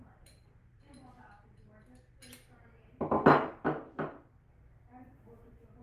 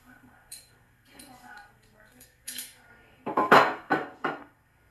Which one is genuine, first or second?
first